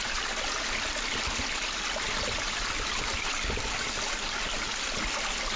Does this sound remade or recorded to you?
remade